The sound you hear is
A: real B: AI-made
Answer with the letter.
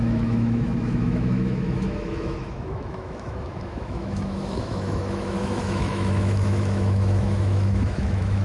B